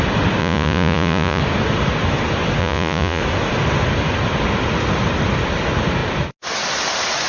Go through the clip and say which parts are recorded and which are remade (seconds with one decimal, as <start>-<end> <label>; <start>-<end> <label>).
0.0-0.4 recorded; 0.4-1.4 remade; 1.4-2.6 recorded; 2.6-3.2 remade; 3.2-7.3 recorded

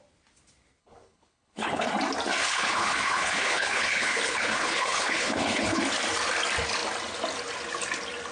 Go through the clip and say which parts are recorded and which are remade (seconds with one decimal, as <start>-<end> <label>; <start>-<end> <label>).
0.0-0.8 recorded; 0.8-1.9 remade; 1.9-2.4 recorded; 2.4-5.8 remade; 5.8-8.3 recorded

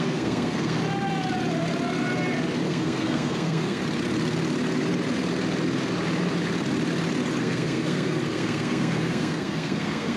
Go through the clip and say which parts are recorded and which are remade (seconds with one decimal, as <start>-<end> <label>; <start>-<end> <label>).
0.0-0.8 remade; 0.8-2.7 recorded; 2.7-3.8 remade; 3.8-7.4 recorded; 7.4-10.2 remade

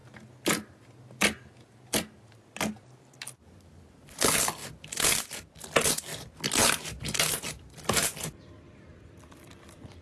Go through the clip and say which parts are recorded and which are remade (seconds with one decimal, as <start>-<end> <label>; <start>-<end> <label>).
0.0-10.0 recorded

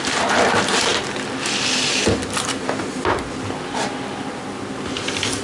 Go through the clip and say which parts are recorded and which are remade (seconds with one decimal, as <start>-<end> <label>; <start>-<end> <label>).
0.0-5.4 recorded

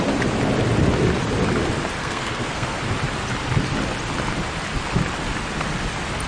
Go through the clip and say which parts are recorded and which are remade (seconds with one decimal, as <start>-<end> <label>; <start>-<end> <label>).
0.0-2.0 recorded; 2.0-2.8 remade; 2.8-6.3 recorded

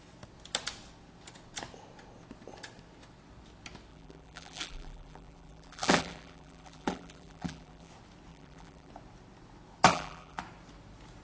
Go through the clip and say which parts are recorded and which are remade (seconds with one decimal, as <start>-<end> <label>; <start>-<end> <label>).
0.0-3.9 recorded; 3.9-7.9 remade; 7.9-8.3 recorded; 8.3-8.9 remade; 8.9-9.9 recorded; 9.9-10.4 remade; 10.4-11.2 recorded

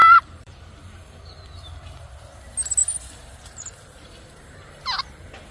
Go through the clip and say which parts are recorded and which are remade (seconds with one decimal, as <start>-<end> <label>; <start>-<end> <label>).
0.0-0.6 remade; 0.6-2.8 recorded; 2.8-4.8 remade; 4.8-5.5 recorded